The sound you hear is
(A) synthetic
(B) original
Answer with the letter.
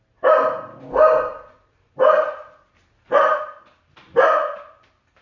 B